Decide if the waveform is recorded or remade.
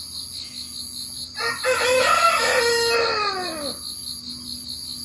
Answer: recorded